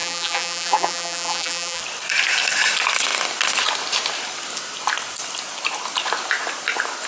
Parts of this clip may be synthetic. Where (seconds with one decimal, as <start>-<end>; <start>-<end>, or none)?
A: 0.0-1.8